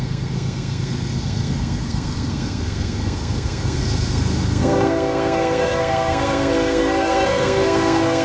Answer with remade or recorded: remade